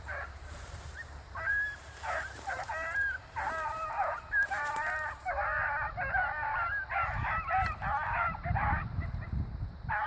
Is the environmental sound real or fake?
fake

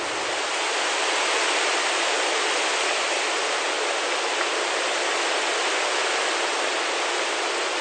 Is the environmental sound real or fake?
real